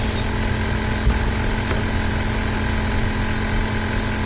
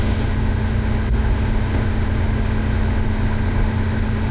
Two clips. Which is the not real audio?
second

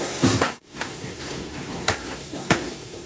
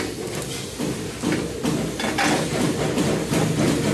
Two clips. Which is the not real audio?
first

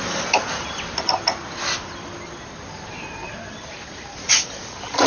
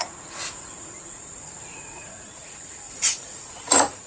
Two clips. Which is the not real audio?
second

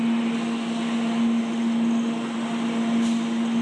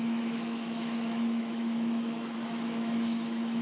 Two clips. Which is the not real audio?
second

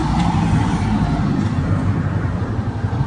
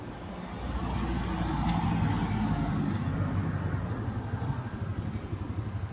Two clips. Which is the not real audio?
first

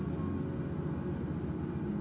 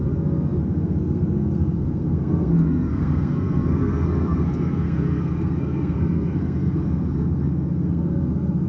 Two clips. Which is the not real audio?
second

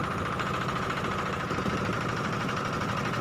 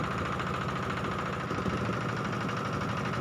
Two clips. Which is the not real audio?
first